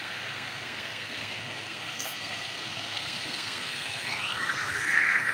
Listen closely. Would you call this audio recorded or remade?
remade